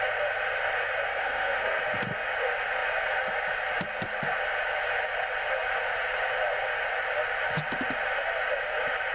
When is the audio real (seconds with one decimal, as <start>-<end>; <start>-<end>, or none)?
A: 0.0-1.1; 1.8-9.1